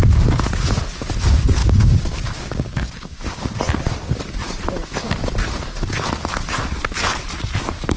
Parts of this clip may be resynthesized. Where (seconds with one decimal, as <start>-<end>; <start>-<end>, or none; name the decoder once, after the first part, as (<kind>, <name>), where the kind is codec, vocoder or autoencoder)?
1.6-3.6 (codec, DAC)